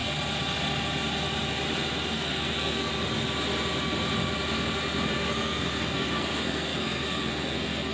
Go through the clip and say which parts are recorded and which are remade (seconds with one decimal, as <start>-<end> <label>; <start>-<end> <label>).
0.0-2.1 recorded; 2.1-2.9 remade; 2.9-5.1 recorded; 5.1-7.9 remade